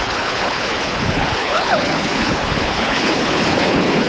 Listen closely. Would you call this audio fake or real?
fake